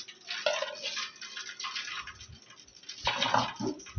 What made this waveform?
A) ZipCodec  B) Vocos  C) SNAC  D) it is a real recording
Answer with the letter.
D